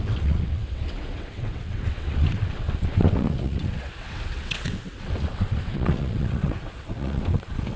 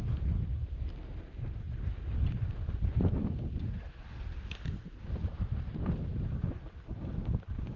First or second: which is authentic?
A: second